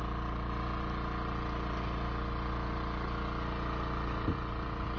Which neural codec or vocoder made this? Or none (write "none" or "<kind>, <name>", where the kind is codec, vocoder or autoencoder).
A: none